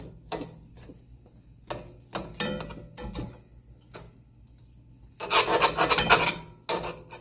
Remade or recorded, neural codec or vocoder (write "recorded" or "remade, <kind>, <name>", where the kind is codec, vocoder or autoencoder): recorded